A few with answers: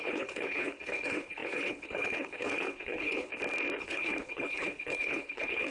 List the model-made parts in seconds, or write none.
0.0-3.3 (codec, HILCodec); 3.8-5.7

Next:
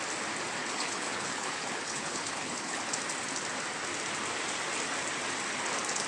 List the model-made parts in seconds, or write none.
0.6-2.8 (codec, HILCodec)

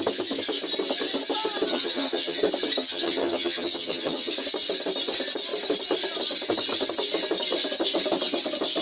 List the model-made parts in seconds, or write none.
1.7-2.4 (vocoder, HiFi-GAN); 2.8-4.3

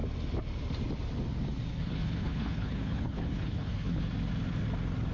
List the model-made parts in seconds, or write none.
1.7-4.0 (codec, HILCodec)